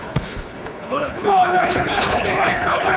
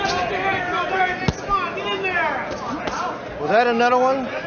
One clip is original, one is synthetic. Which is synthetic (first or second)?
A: first